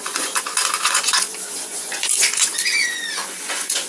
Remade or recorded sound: remade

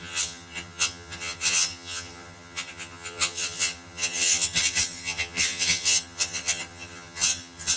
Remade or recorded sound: remade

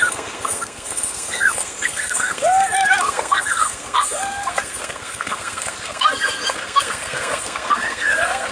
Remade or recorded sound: remade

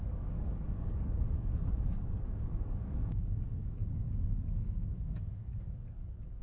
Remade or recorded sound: remade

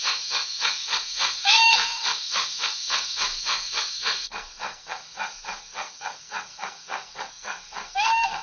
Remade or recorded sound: remade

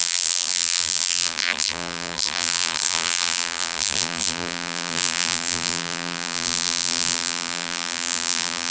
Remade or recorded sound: remade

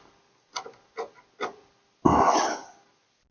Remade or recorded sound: recorded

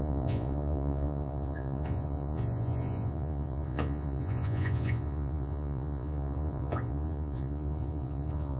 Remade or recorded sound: remade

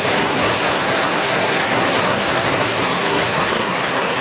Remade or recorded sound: remade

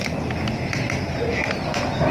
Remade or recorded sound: recorded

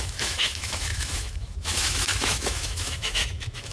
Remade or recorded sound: remade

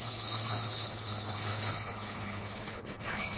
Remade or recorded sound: remade